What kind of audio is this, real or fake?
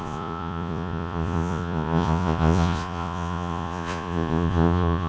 fake